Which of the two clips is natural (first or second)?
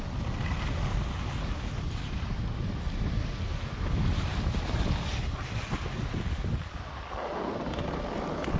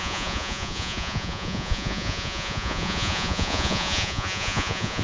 first